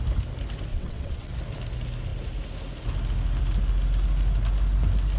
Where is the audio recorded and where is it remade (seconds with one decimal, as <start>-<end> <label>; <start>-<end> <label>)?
0.0-0.7 recorded; 0.7-1.3 remade; 1.3-5.2 recorded

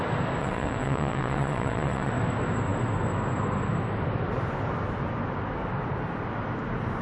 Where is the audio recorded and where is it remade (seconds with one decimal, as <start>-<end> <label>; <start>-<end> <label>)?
0.0-0.4 recorded; 0.4-2.1 remade; 2.1-7.0 recorded

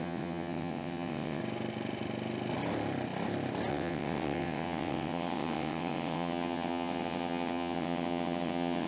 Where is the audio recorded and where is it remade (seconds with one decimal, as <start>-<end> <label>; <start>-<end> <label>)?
0.0-1.4 remade; 1.4-3.7 recorded; 3.7-8.9 remade

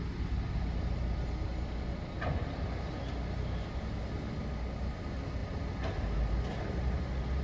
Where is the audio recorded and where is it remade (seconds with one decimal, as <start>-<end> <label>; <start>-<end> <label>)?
0.0-7.4 recorded